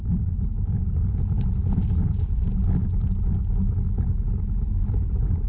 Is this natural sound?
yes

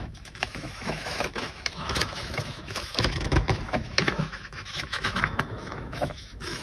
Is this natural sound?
no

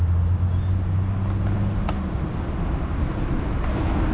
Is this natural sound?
yes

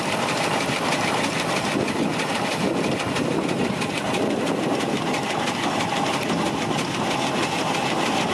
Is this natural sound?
yes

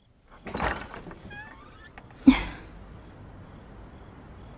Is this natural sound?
yes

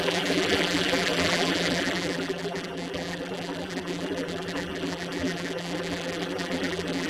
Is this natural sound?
no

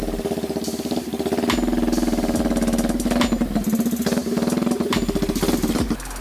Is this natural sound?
yes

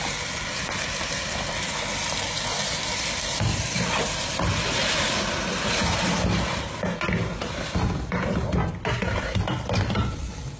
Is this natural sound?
no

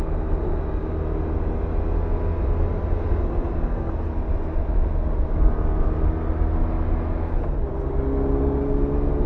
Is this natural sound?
yes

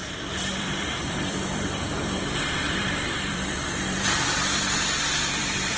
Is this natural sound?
no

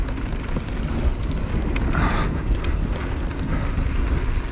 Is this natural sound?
yes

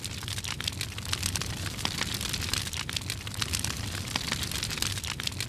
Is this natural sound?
no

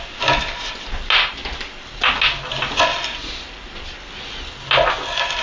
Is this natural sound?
yes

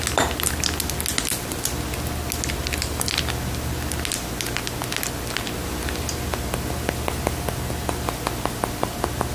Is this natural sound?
yes